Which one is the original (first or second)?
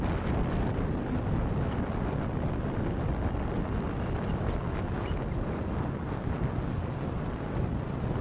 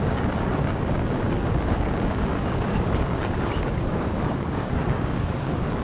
first